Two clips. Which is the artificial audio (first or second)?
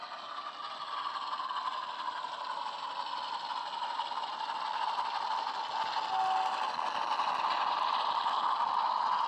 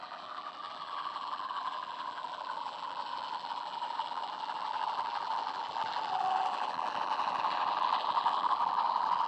second